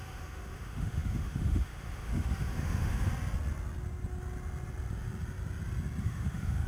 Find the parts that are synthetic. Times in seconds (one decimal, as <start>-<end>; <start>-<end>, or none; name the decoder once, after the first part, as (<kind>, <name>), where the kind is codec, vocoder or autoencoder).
0.0-3.1 (autoencoder, DAC-VAE); 6.0-6.7